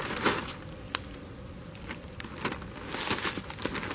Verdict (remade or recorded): recorded